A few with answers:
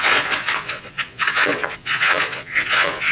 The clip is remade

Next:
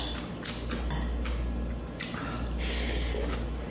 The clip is recorded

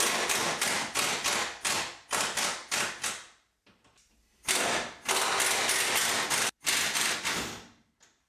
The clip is recorded